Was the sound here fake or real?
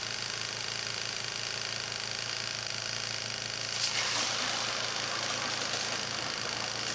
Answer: real